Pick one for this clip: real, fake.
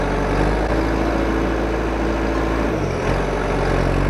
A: real